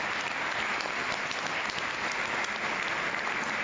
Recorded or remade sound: recorded